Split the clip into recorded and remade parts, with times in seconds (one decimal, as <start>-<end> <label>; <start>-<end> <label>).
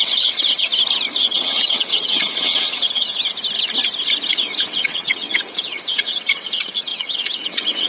0.0-0.7 remade; 0.7-1.2 recorded; 1.2-3.1 remade; 3.1-4.3 recorded; 4.3-7.9 remade